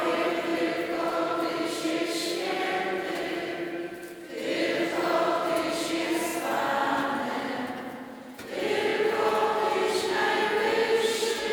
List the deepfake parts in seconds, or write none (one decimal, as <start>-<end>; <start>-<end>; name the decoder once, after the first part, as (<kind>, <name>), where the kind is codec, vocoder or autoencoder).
0.0-0.5 (vocoder, Vocos); 5.5-6.3; 7.7-11.5